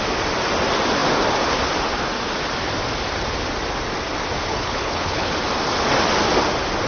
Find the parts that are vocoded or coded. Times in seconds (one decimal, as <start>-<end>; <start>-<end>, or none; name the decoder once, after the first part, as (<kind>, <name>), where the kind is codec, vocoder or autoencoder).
4.5-5.3 (codec, HILCodec)